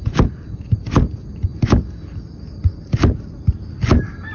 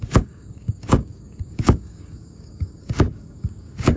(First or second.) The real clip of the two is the first